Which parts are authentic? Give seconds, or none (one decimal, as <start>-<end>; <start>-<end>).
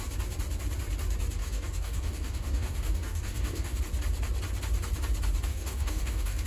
0.0-1.4; 3.8-5.5